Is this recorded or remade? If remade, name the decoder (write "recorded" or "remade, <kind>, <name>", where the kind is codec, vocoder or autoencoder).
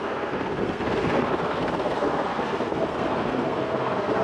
remade, codec, SNAC